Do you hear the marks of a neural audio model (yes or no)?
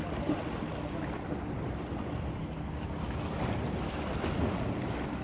no